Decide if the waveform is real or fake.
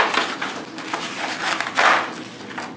real